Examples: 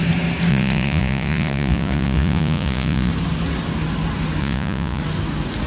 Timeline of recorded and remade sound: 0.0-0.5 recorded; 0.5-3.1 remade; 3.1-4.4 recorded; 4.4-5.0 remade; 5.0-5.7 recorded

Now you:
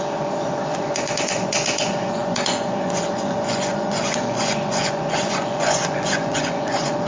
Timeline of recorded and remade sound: 0.0-7.1 remade

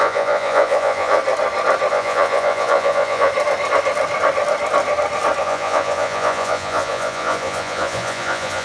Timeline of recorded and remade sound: 0.0-1.2 remade; 1.2-1.9 recorded; 1.9-3.3 remade; 3.3-5.4 recorded; 5.4-8.6 remade

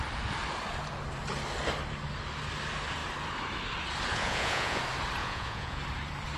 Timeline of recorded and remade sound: 0.0-4.1 recorded; 4.1-4.8 remade; 4.8-5.2 recorded; 5.2-5.8 remade; 5.8-6.4 recorded

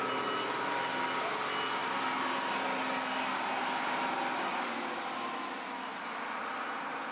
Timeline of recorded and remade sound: 0.0-7.1 recorded

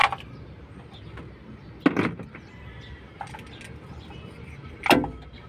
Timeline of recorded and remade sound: 0.0-5.5 recorded

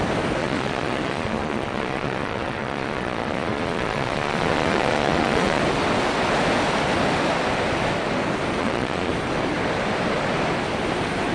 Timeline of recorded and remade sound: 0.0-0.4 recorded; 0.4-5.6 remade; 5.6-8.6 recorded; 8.6-9.1 remade; 9.1-11.3 recorded